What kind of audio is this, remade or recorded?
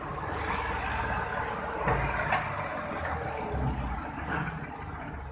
recorded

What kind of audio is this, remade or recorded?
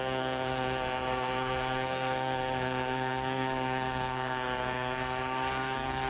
remade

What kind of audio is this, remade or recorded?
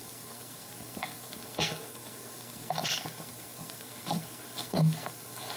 remade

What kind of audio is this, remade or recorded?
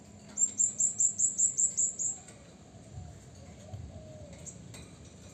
recorded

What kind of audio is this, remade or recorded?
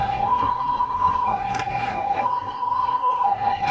remade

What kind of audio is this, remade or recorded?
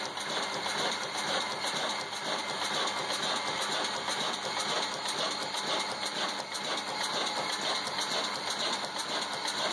recorded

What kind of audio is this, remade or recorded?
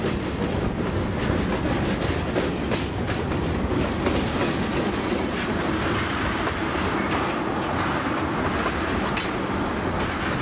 recorded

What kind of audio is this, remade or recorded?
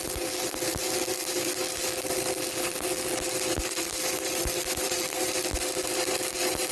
recorded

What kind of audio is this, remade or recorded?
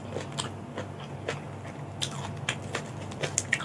recorded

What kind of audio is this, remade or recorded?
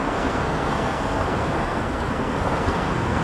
remade